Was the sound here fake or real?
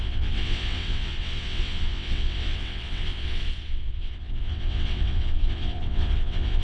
fake